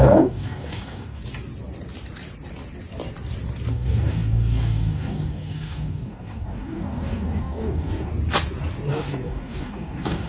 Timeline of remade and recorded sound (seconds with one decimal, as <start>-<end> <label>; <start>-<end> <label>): 0.0-1.2 remade; 1.2-3.7 recorded; 3.7-8.1 remade; 8.1-8.9 recorded; 8.9-10.3 remade